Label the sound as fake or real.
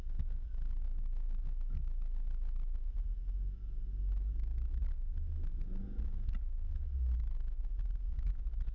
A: real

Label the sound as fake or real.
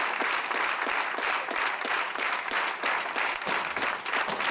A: real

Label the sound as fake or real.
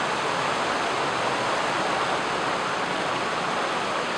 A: real